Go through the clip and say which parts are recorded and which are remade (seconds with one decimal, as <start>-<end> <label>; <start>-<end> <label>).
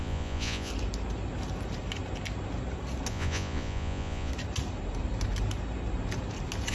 0.0-0.7 remade; 0.7-3.1 recorded; 3.1-4.3 remade; 4.3-6.7 recorded